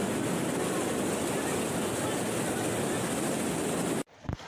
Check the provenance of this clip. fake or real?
real